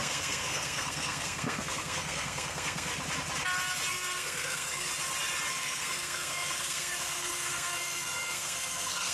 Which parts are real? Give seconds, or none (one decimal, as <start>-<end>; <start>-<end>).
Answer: 2.9-3.9; 4.9-5.5